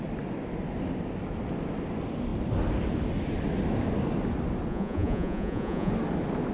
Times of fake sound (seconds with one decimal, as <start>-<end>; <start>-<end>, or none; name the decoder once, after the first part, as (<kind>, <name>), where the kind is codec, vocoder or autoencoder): 4.7-5.9 (vocoder, Vocos)